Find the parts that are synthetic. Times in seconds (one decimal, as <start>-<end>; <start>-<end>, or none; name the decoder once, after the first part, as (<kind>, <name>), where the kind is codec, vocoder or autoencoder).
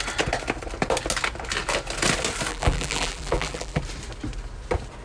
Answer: 2.5-3.8 (vocoder, BigVGAN v2)